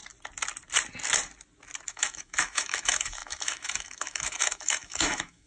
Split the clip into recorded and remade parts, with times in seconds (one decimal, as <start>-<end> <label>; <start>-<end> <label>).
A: 0.0-1.9 recorded; 1.9-5.5 remade